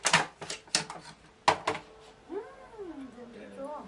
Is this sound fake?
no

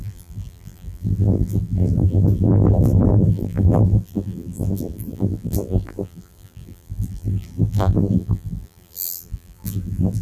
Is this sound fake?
yes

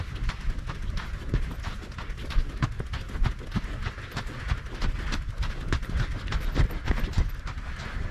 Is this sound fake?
no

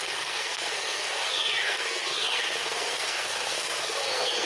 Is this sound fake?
yes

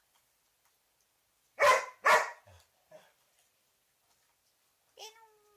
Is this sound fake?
yes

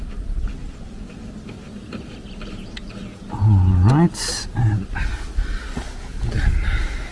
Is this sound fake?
no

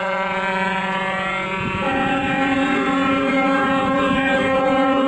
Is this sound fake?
yes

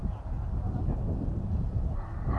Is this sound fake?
no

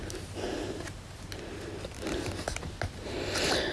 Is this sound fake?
no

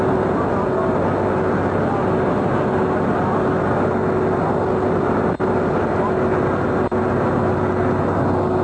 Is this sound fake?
no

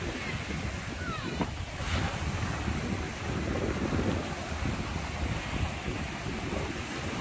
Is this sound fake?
no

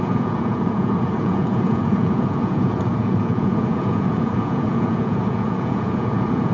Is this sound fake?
yes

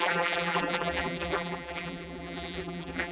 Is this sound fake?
yes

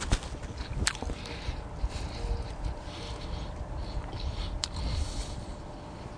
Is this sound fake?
no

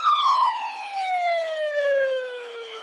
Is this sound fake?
yes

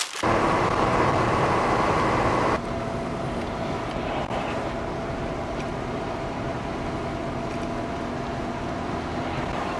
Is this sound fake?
no